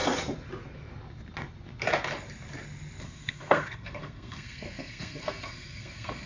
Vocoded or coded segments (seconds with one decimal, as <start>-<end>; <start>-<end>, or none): 3.0-6.3